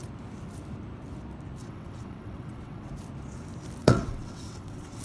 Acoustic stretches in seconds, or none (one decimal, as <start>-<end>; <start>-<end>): 0.0-1.6; 2.9-3.8